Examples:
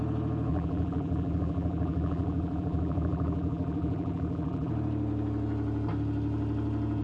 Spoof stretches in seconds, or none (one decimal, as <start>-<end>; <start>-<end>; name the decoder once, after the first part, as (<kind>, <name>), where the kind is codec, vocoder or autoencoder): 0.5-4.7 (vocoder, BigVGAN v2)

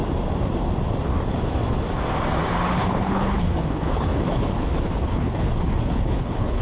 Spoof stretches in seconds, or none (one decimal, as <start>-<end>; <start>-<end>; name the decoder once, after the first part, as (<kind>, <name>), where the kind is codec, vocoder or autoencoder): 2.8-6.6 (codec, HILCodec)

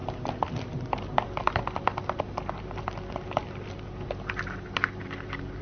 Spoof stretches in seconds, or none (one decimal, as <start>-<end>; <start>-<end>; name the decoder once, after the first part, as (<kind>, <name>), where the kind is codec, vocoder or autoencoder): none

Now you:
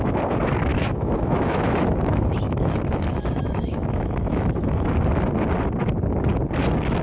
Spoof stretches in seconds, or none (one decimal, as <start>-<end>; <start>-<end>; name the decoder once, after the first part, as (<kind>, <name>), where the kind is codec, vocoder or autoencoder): 0.7-4.9 (autoencoder, DAC-VAE)